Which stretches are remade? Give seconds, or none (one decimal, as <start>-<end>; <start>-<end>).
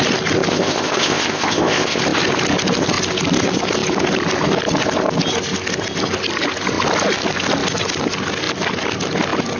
0.5-2.0